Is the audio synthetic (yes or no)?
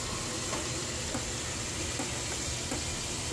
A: no